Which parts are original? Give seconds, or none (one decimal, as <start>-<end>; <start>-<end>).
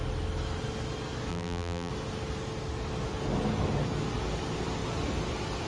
0.0-1.3; 1.9-5.7